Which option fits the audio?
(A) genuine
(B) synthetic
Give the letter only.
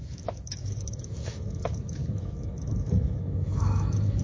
B